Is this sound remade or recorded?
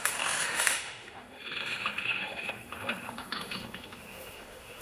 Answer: remade